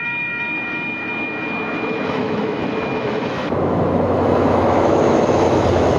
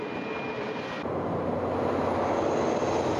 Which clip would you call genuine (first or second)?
second